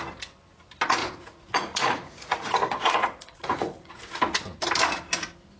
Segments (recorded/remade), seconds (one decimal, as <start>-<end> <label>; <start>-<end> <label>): 0.0-1.0 recorded; 1.0-4.0 remade; 4.0-5.6 recorded